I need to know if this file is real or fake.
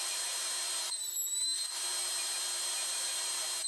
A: real